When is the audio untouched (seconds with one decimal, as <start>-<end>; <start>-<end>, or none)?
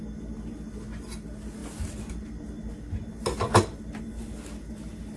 0.0-5.2